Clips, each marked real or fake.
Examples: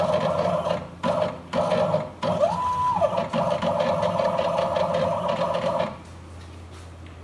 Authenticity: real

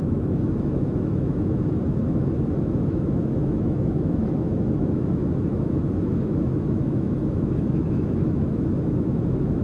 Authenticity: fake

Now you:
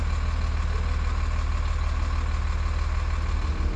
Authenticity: real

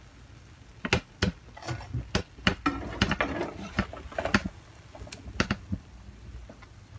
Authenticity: real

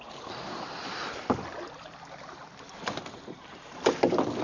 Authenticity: real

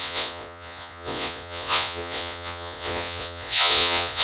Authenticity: fake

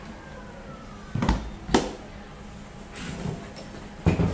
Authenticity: real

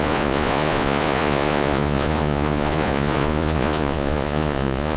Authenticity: fake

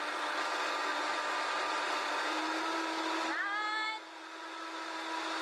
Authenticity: real